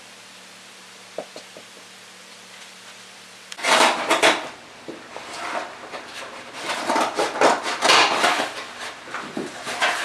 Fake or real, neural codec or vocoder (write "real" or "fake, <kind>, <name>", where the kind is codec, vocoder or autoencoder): fake, vocoder, BigVGAN v2